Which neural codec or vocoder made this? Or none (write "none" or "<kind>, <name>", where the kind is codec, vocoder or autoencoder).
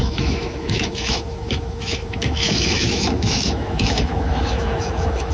autoencoder, DAC-VAE